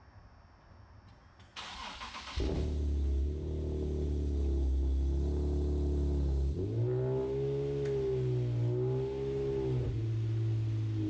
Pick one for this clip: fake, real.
real